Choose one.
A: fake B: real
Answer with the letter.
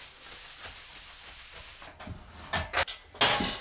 B